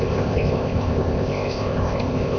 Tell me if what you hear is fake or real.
fake